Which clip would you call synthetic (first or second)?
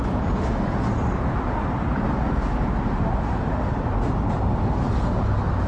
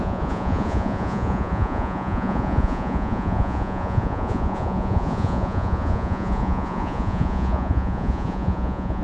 second